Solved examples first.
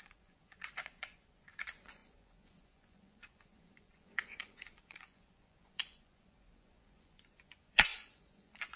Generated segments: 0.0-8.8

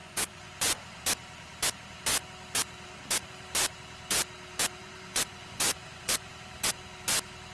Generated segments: 0.0-1.0; 4.8-6.3

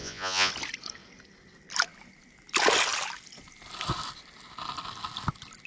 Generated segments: 0.0-0.5

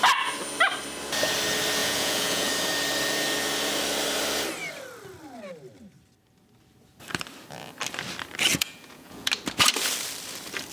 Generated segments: 1.8-2.5; 8.5-9.3